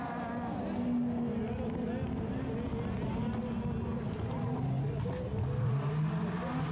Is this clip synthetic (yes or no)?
no